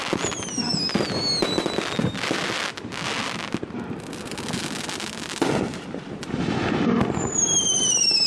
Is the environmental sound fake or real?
real